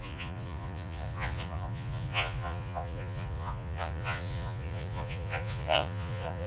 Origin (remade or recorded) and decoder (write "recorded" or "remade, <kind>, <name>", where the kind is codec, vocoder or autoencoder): remade, vocoder, Vocos